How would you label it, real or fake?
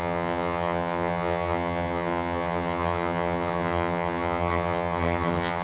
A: fake